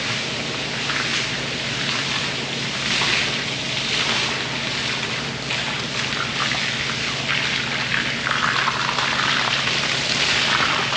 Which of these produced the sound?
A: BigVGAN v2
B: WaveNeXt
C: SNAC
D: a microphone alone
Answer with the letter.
D